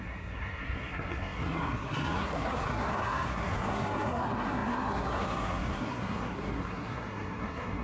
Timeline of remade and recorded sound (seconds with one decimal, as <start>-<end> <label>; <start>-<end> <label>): 0.0-7.8 remade